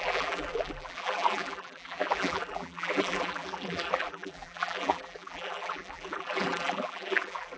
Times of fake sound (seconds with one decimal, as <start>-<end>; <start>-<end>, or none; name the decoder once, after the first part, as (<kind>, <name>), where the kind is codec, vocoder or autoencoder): 0.0-7.6 (vocoder, BigVGAN v2)